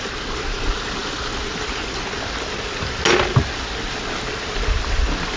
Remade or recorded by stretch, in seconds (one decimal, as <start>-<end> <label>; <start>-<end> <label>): 0.0-5.4 recorded